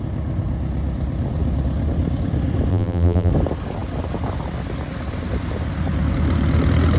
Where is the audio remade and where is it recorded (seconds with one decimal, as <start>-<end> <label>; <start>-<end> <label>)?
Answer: 0.0-2.7 recorded; 2.7-3.3 remade; 3.3-7.0 recorded